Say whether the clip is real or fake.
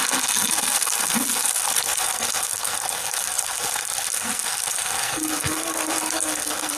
fake